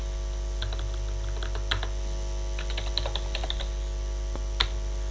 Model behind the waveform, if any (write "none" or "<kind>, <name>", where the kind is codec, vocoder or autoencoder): none